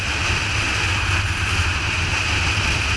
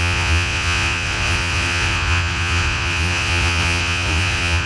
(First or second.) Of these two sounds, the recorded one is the first